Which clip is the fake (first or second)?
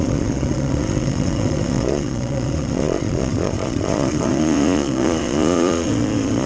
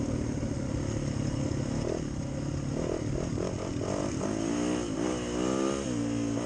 first